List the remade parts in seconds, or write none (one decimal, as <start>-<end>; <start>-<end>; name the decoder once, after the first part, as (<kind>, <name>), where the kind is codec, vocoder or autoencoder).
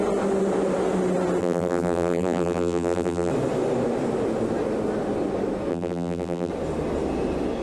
1.4-3.3 (vocoder, BigVGAN v2); 5.7-6.5